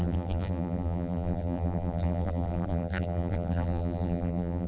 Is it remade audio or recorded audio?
remade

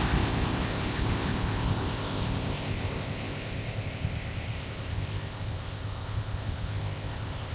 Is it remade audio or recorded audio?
remade